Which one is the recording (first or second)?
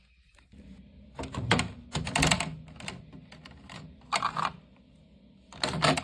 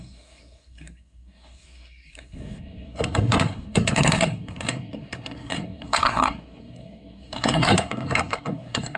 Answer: first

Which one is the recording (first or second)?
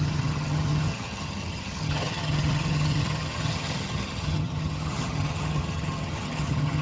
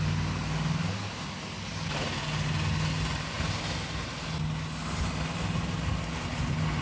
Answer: second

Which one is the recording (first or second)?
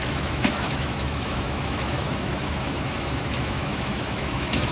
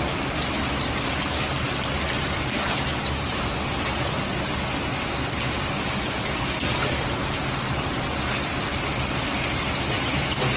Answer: second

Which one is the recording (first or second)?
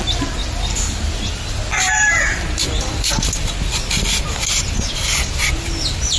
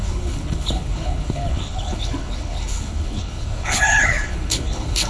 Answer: first